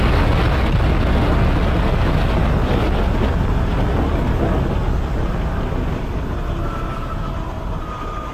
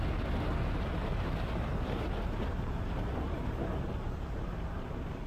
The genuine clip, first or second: first